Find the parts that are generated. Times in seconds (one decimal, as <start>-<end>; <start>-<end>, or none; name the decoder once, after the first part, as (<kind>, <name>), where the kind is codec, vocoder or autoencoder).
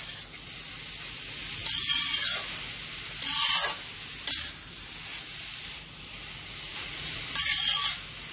6.7-7.2 (vocoder, Vocos)